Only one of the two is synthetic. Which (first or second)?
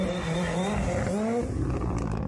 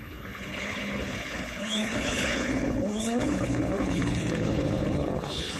second